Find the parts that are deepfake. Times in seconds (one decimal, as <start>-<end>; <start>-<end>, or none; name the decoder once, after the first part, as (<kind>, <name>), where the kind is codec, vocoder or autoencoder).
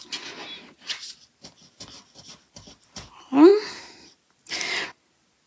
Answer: 3.5-4.0 (vocoder, BigVGAN v2)